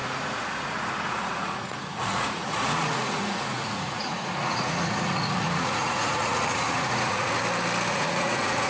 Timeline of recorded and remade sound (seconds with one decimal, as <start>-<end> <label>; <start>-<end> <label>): 0.0-7.4 remade; 7.4-7.9 recorded; 7.9-8.7 remade